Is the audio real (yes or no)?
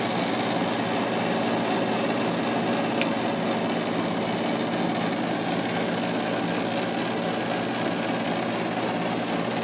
yes